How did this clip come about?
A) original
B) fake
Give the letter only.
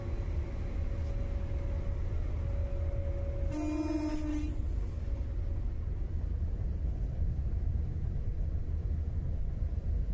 A